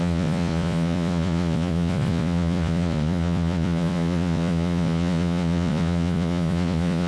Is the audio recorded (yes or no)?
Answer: no